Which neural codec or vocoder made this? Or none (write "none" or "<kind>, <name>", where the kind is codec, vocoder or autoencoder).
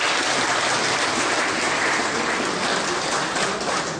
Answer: none